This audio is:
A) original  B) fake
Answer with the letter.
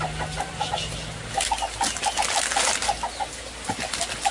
A